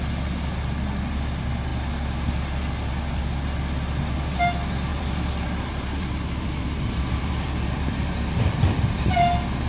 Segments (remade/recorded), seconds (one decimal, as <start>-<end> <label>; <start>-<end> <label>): 0.0-4.9 recorded; 4.9-8.8 remade; 8.8-9.7 recorded